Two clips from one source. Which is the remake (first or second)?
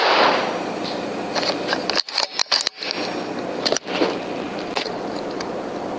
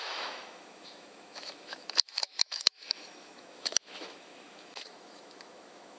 second